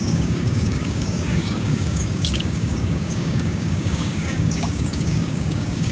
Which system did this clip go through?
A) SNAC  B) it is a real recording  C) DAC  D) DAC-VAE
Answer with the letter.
C